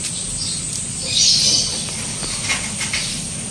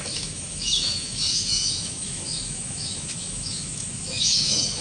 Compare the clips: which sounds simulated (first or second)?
second